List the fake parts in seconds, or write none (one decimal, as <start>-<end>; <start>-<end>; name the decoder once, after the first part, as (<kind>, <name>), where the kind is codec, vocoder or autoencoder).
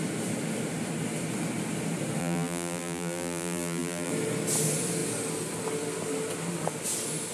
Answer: 2.2-4.1 (vocoder, BigVGAN v2)